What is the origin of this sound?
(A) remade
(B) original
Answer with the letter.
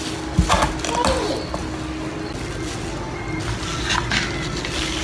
B